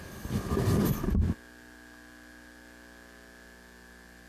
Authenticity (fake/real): real